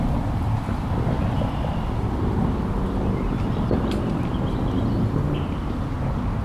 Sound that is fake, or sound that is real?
real